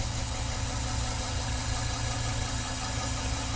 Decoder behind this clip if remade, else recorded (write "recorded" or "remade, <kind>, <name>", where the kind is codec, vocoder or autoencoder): remade, vocoder, HiFi-GAN